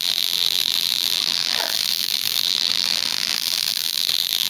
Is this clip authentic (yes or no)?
no